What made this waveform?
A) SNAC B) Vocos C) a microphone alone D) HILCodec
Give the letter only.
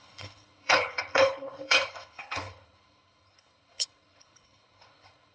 D